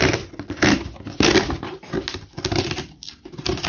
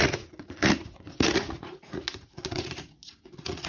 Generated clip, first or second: second